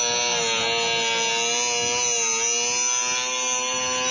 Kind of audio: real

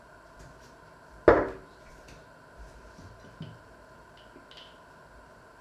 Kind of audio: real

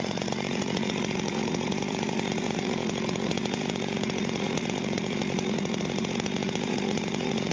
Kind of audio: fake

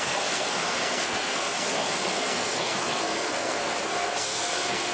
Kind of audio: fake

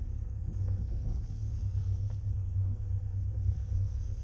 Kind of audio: fake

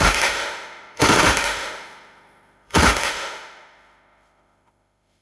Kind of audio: fake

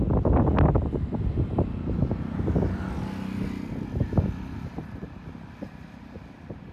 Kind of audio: real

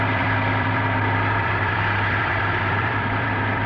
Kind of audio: fake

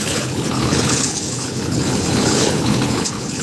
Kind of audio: fake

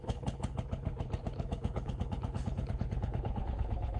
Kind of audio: fake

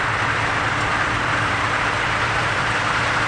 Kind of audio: fake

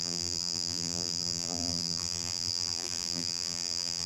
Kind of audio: fake